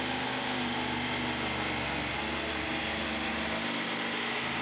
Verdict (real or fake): real